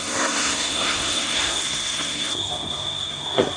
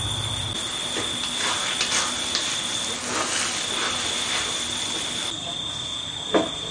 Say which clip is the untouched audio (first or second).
second